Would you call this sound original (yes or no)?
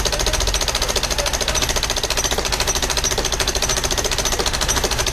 yes